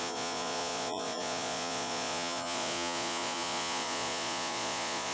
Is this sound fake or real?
fake